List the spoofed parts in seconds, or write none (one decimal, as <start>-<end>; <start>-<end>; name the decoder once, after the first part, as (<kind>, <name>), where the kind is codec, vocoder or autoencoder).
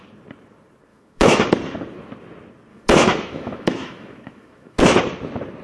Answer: 0.9-1.5 (autoencoder, DAC-VAE); 2.7-4.8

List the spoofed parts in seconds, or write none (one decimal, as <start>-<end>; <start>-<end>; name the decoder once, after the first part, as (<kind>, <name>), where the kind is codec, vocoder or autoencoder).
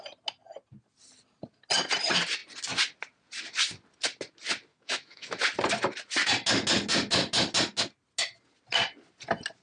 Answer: 4.7-5.4 (autoencoder, DAC-VAE)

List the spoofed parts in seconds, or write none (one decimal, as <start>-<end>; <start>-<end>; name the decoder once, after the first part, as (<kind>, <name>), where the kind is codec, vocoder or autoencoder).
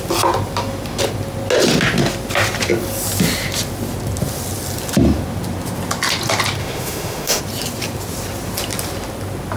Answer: 6.6-7.4 (autoencoder, DAC-VAE)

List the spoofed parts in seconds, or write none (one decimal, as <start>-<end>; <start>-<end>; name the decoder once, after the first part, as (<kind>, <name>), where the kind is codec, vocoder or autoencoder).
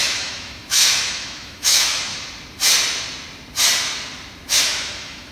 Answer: 0.0-2.1 (autoencoder, DAC-VAE); 4.6-5.3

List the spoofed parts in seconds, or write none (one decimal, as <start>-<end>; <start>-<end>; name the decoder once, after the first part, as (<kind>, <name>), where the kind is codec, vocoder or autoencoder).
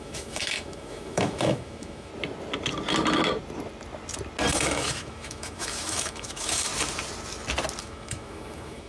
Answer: 0.0-2.1 (autoencoder, DAC-VAE); 4.5-6.7; 7.8-8.9